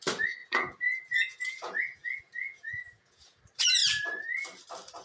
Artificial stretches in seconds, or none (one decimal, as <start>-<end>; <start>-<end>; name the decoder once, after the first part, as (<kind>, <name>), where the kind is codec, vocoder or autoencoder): 0.4-3.4 (vocoder, Vocos)